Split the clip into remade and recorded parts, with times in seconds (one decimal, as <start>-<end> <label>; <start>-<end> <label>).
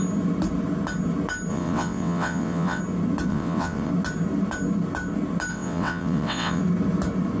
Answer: 0.0-1.5 recorded; 1.5-2.8 remade; 2.8-3.3 recorded; 3.3-3.9 remade; 3.9-5.5 recorded; 5.5-6.6 remade; 6.6-7.4 recorded